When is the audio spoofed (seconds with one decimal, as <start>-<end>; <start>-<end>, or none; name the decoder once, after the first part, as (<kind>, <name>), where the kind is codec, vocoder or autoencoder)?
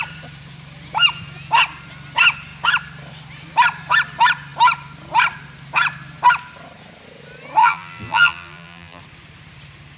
7.6-9.0 (vocoder, BigVGAN v2)